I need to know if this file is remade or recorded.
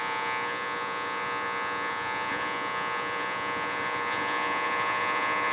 remade